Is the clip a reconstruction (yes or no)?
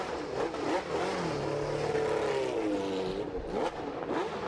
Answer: no